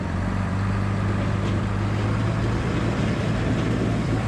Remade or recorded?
remade